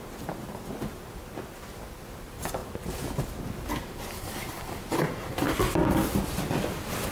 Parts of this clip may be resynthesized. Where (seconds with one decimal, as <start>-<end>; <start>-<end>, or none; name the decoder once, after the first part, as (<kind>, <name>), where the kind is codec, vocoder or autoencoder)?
none